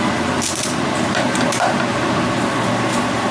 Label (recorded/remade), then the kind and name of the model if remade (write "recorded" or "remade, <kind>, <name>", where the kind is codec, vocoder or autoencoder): recorded